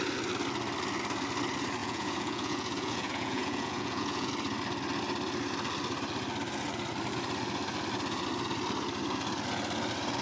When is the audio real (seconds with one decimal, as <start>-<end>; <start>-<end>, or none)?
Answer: 0.0-1.8; 4.3-10.2